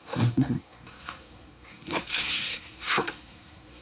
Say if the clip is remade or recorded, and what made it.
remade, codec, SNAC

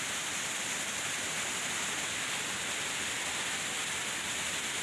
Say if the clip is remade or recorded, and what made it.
recorded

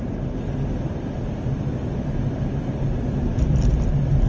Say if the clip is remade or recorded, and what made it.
recorded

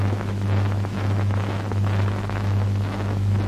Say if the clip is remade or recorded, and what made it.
remade, autoencoder, DAC-VAE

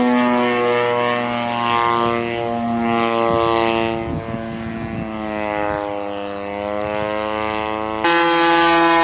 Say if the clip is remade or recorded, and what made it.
recorded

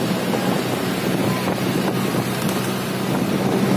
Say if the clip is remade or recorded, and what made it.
recorded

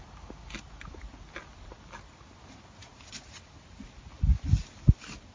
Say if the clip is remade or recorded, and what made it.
recorded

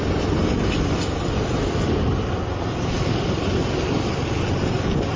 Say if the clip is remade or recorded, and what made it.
recorded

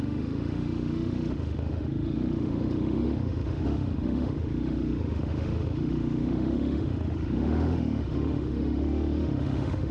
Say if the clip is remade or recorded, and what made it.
remade, autoencoder, DAC-VAE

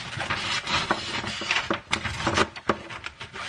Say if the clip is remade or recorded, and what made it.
recorded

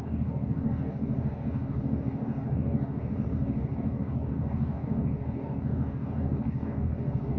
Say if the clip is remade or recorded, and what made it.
remade, codec, DAC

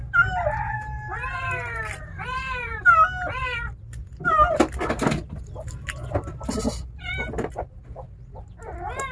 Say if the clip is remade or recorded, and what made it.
recorded